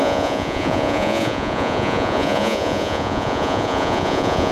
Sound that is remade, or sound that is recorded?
remade